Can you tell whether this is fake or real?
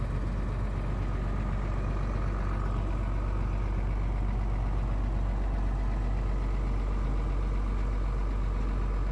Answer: real